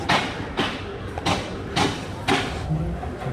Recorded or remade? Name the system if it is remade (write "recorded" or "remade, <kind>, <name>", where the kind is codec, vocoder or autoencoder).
recorded